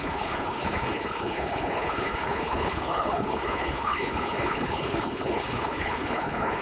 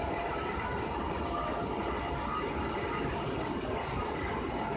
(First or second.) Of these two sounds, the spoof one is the first